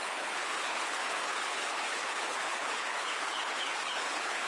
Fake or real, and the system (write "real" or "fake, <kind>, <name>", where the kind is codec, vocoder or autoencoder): fake, codec, HILCodec